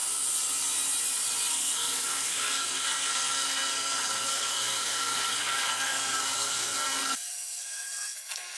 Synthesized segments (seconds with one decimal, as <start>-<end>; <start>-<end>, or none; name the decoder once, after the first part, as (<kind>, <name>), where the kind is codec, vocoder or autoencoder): 1.5-8.6 (codec, SNAC)